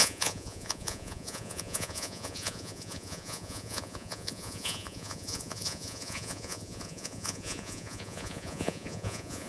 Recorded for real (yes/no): no